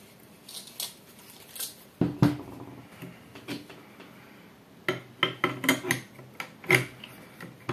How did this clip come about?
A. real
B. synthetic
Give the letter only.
A